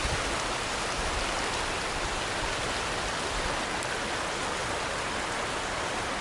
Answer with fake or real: real